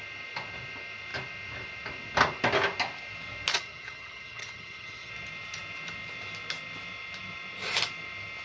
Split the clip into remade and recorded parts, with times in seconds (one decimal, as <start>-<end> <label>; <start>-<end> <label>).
0.0-3.5 recorded; 3.5-5.1 remade; 5.1-8.4 recorded